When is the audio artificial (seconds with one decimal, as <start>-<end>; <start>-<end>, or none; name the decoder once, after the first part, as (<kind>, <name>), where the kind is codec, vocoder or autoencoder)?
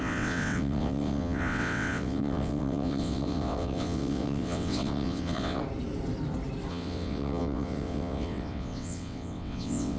0.0-5.6 (vocoder, WaveNeXt); 6.7-10.0